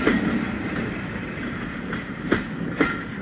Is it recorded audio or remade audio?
remade